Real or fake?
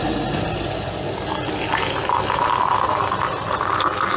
real